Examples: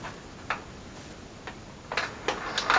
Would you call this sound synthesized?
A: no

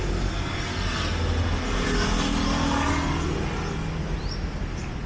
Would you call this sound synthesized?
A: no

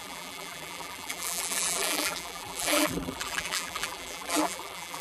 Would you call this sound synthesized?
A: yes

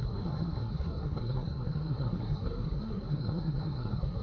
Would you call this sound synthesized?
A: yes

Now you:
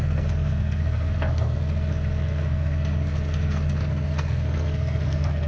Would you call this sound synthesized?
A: yes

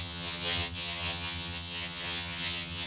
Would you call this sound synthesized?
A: yes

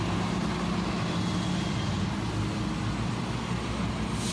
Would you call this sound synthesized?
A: no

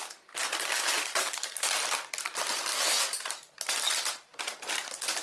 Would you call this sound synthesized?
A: no